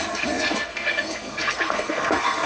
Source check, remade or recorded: remade